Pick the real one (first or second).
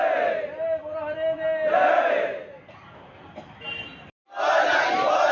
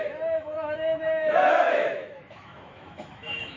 first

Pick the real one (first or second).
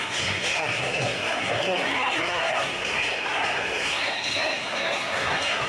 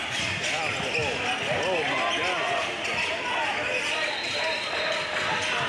second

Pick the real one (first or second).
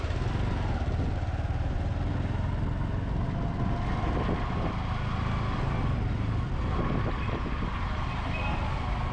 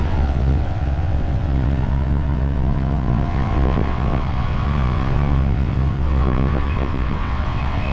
first